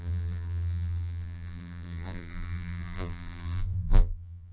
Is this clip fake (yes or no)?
yes